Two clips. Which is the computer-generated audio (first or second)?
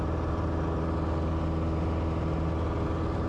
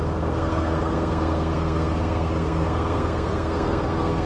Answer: second